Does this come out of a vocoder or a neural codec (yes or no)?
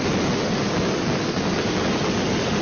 no